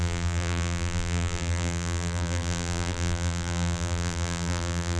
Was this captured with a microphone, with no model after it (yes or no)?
no